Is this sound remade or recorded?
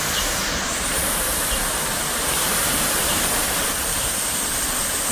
remade